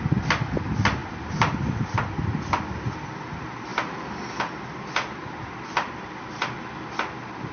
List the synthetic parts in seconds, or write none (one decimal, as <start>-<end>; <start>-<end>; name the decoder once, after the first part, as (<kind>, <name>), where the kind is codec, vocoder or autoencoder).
none